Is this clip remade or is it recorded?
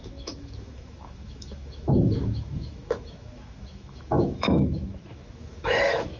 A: remade